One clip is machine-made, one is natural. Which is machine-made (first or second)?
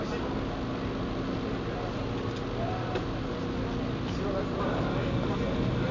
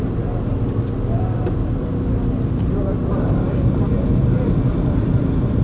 second